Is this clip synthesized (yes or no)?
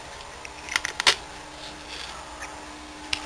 no